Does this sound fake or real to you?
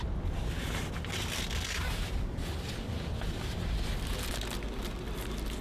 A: real